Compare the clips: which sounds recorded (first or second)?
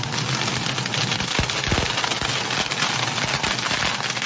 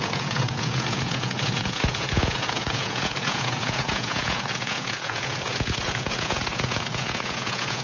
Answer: first